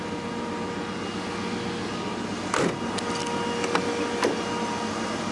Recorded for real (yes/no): yes